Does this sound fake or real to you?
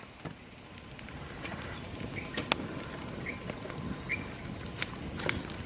real